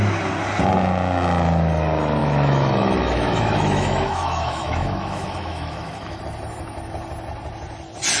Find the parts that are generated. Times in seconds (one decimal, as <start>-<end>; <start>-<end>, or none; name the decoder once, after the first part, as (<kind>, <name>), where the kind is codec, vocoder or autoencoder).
2.2-6.2 (autoencoder, DAC-VAE)